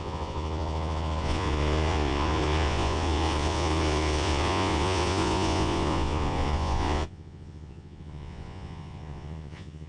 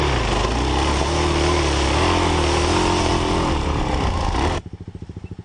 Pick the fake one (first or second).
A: first